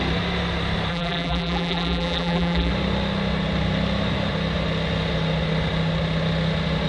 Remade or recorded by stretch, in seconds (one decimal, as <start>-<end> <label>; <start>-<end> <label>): 0.0-0.9 recorded; 0.9-2.7 remade; 2.7-6.9 recorded